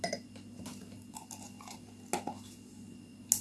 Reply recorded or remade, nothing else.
recorded